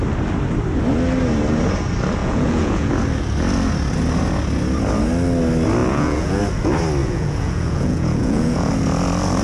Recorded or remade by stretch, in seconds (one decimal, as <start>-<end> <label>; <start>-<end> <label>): 0.0-2.2 recorded; 2.2-2.9 remade; 2.9-5.8 recorded; 5.8-6.4 remade; 6.4-7.0 recorded; 7.0-8.7 remade; 8.7-9.4 recorded